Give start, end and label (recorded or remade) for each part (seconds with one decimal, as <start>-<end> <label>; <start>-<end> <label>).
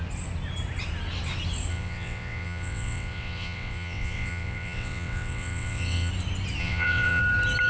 0.0-1.7 recorded; 1.7-6.1 remade; 6.1-6.6 recorded; 6.6-7.2 remade; 7.2-7.7 recorded